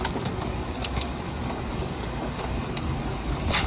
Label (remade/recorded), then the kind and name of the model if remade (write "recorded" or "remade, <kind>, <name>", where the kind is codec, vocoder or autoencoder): remade, codec, DAC